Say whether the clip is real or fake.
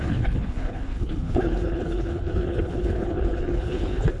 fake